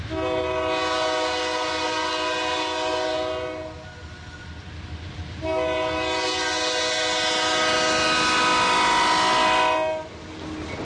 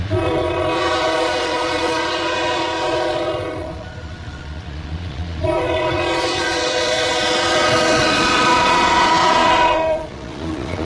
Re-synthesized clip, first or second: second